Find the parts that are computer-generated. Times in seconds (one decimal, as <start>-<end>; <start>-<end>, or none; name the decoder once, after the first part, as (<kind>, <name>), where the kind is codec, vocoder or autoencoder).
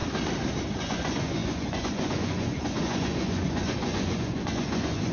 0.8-5.1 (vocoder, Vocos)